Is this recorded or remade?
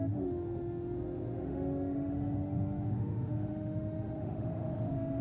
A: remade